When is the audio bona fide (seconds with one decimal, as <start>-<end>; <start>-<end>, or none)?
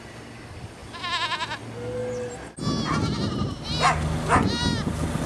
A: 0.0-5.3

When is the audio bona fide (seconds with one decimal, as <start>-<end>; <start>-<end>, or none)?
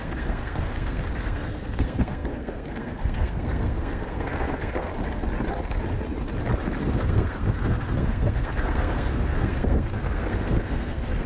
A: 4.9-6.8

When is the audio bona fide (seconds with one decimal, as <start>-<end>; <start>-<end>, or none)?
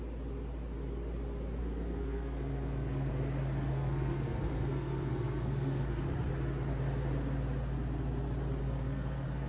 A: 0.0-1.6; 3.1-3.7; 6.0-8.6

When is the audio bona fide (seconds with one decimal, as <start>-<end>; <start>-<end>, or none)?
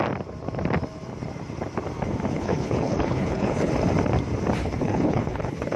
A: 0.0-2.3; 3.7-4.6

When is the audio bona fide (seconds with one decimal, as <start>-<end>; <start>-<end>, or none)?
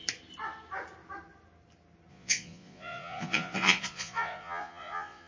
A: 0.0-2.1